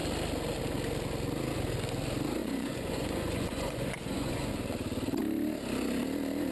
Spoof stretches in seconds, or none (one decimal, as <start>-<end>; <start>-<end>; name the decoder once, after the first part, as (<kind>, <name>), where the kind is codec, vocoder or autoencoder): 2.4-4.5 (vocoder, Vocos)

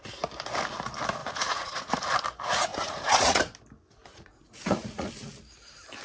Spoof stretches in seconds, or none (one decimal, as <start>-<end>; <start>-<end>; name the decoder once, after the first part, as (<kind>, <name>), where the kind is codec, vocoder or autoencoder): 1.2-2.0 (vocoder, Vocos); 2.7-3.4; 4.1-5.1

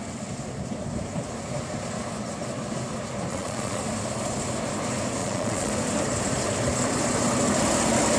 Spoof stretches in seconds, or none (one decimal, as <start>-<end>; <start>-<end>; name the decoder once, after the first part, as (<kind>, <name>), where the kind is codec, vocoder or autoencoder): 3.3-3.8 (vocoder, Vocos); 5.2-5.7

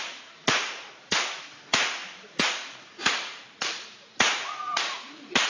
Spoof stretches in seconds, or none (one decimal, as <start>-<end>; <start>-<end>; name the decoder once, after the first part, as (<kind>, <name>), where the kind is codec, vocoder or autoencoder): 0.0-5.5 (vocoder, Vocos)